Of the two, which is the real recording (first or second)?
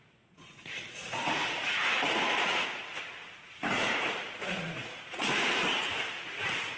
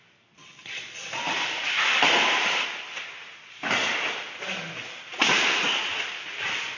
second